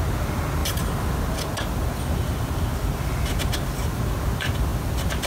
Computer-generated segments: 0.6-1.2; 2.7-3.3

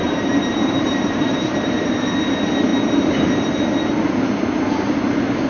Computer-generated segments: 0.0-1.7

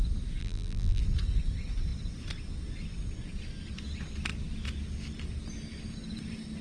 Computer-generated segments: 0.4-1.0